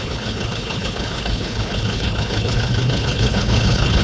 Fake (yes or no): yes